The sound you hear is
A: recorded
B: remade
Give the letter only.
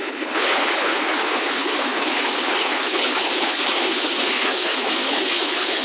B